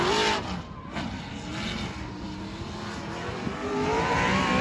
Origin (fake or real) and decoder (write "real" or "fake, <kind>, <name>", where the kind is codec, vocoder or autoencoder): real